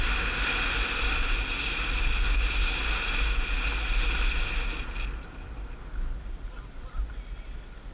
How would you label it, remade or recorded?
recorded